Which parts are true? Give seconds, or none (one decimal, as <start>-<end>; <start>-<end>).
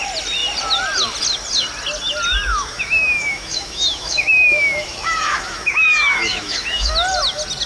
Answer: 0.0-2.5; 6.9-7.7